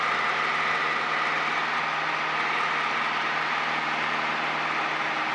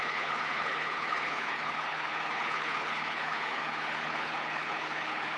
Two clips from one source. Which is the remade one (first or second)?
second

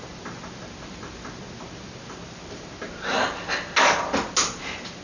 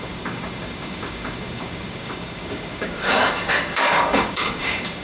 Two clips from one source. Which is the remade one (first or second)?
second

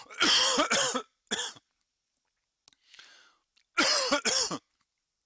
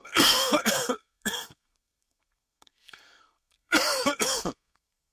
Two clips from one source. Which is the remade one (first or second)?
second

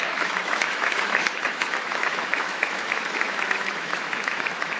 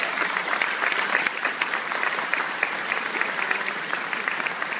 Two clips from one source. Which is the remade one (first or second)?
first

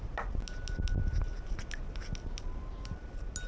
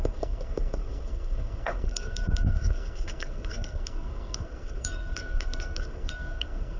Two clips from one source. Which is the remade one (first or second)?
second